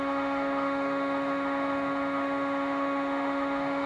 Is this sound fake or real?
fake